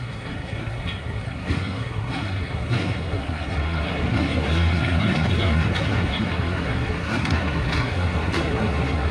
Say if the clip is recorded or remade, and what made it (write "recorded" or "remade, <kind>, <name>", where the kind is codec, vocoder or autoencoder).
remade, codec, SNAC